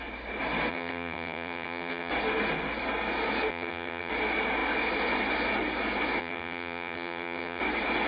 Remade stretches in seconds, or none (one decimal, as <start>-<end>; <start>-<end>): 0.7-2.1; 3.5-4.1; 6.2-7.6